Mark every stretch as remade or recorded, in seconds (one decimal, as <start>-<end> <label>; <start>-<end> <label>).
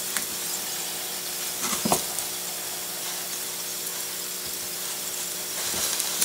0.0-1.9 remade; 1.9-3.0 recorded; 3.0-3.9 remade; 3.9-4.5 recorded; 4.5-6.2 remade